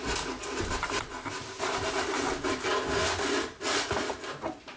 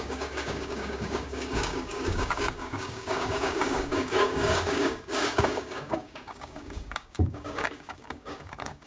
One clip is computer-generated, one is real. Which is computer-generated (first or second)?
second